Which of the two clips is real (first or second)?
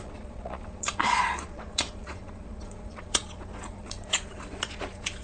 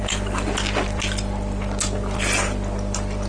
second